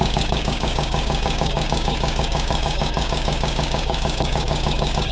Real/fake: fake